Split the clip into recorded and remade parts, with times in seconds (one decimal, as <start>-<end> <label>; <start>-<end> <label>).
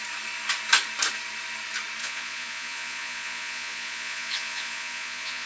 0.0-2.0 recorded; 2.0-5.5 remade